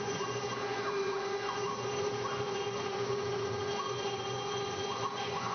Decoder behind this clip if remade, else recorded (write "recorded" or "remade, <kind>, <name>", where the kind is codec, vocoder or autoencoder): remade, vocoder, Vocos